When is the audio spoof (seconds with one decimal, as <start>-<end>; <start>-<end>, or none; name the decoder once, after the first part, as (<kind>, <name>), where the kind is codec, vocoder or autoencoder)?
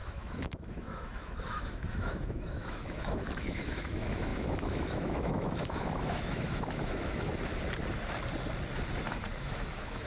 0.0-7.3 (autoencoder, DAC-VAE); 9.4-10.1